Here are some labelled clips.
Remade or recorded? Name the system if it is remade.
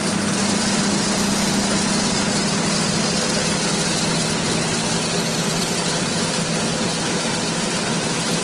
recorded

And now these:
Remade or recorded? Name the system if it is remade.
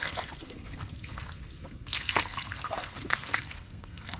remade, codec, SNAC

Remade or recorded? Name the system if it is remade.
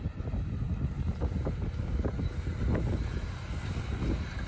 recorded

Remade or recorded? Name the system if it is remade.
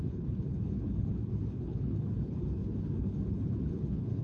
remade, codec, HILCodec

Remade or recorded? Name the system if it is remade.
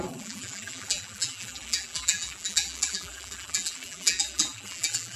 remade, vocoder, BigVGAN v2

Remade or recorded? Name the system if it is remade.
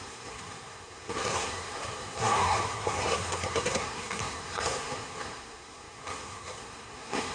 remade, codec, SNAC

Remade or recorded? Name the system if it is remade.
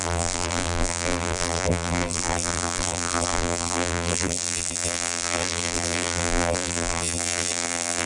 remade, vocoder, BigVGAN v2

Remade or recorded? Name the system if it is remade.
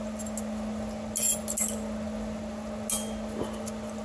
recorded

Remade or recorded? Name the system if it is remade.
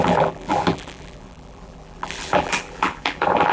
remade, vocoder, BigVGAN v2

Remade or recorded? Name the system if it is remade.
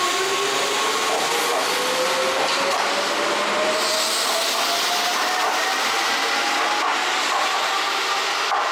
recorded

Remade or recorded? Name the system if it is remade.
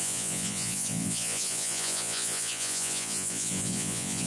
remade, vocoder, Vocos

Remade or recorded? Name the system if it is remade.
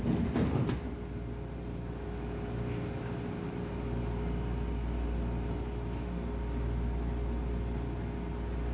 recorded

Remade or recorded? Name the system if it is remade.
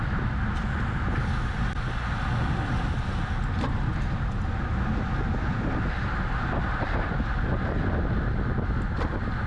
recorded